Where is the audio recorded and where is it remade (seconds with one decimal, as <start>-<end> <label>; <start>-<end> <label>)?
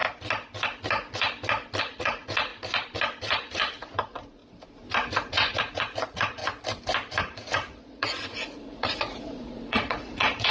0.0-1.8 recorded; 1.8-2.5 remade; 2.5-3.2 recorded; 3.2-4.4 remade; 4.4-5.1 recorded; 5.1-6.4 remade; 6.4-7.2 recorded; 7.2-10.5 remade